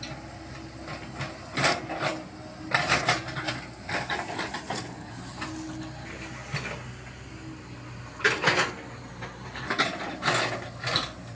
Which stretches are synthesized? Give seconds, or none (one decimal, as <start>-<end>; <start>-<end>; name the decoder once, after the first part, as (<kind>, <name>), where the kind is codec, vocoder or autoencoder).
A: none